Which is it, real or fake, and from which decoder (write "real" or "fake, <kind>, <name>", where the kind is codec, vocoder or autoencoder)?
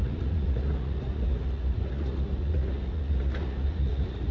fake, vocoder, Vocos